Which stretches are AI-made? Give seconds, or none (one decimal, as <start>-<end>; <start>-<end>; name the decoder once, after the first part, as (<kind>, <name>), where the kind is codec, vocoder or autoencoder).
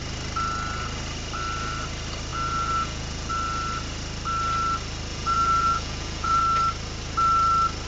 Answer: 2.3-3.3 (vocoder, Vocos); 5.1-6.4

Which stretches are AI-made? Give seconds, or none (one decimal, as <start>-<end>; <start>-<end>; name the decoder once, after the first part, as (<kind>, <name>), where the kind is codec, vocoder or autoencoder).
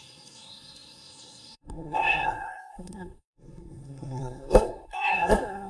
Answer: 0.0-5.7 (codec, SNAC)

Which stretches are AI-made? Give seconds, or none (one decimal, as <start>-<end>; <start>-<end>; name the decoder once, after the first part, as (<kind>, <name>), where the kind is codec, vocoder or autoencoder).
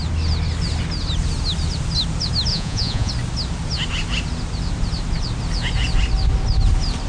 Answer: 2.5-3.1 (vocoder, Vocos)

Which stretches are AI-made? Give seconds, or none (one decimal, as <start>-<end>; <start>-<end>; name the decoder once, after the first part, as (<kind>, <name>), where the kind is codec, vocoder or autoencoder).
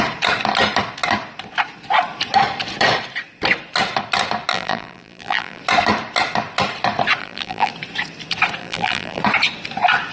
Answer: 4.5-5.6 (vocoder, BigVGAN v2); 7.2-7.7; 8.6-9.2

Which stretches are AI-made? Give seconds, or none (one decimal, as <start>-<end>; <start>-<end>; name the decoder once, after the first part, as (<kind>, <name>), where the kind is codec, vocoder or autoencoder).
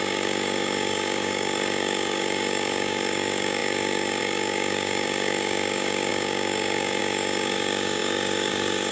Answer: 0.0-8.9 (codec, DAC)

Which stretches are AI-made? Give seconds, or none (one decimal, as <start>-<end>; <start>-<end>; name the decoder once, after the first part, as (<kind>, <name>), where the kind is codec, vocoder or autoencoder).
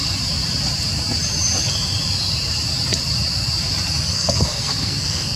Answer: 4.1-5.4 (codec, SNAC)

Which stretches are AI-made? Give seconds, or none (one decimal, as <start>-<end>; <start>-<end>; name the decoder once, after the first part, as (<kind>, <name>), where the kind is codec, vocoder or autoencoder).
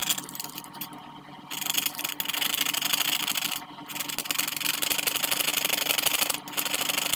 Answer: none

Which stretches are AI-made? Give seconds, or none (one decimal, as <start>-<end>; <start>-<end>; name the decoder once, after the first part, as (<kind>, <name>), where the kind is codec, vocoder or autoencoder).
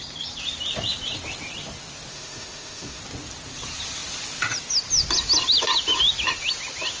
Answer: 2.1-3.0 (autoencoder, DAC-VAE)